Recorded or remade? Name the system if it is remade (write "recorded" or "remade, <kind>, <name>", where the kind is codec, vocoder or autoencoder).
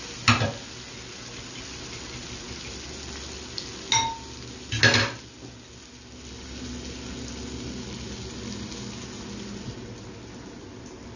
recorded